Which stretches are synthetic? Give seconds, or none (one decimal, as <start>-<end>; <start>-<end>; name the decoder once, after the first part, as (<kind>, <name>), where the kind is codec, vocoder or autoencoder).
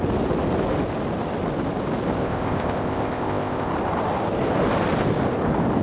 2.2-3.7 (codec, ZipCodec)